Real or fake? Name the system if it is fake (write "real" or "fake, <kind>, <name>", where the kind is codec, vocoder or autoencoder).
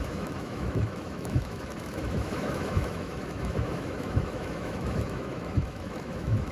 fake, autoencoder, DAC-VAE